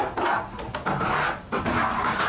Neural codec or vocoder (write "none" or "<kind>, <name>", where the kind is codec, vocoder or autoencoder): none